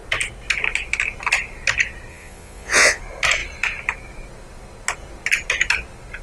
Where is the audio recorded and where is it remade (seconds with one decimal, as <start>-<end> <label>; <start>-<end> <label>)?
0.0-2.1 recorded; 2.1-3.0 remade; 3.0-6.2 recorded